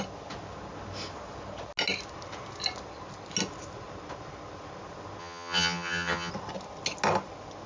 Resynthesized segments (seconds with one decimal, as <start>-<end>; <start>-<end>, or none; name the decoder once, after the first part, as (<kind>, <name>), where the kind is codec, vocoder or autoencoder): 5.2-6.3 (vocoder, HiFi-GAN)